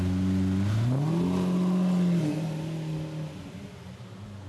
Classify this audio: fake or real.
real